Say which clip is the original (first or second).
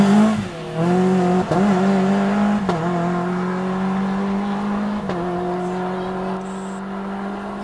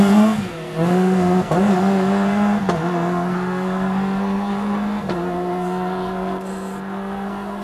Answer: first